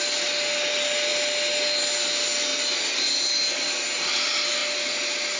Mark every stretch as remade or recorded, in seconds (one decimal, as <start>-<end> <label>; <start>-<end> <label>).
0.0-5.4 recorded